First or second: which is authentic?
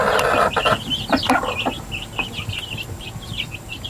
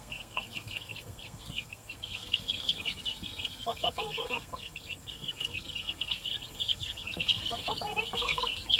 first